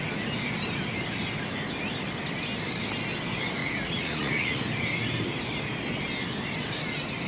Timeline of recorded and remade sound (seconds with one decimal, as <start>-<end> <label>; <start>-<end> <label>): 0.0-3.6 recorded; 3.6-4.6 remade; 4.6-7.3 recorded